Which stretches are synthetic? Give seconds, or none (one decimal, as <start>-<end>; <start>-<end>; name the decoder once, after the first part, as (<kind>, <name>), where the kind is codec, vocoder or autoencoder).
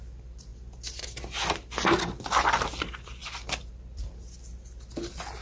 none